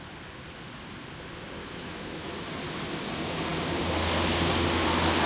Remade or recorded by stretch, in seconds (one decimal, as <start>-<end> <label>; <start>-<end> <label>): 0.0-1.6 recorded; 1.6-2.3 remade; 2.3-5.3 recorded